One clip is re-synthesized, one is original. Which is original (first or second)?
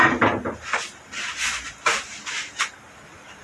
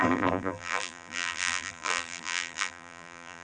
first